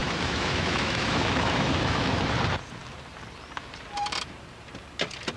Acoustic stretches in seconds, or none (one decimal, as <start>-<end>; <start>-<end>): 2.2-5.4